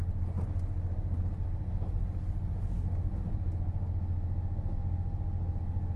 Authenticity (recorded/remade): recorded